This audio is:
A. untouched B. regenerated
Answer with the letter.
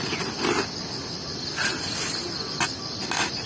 A